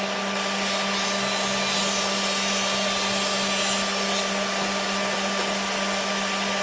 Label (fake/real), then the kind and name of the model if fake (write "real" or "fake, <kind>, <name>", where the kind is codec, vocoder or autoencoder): real